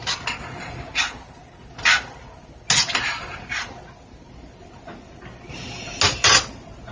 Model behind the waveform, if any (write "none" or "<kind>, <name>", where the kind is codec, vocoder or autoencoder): none